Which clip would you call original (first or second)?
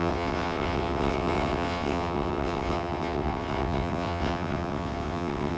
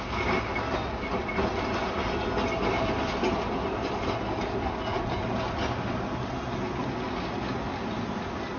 second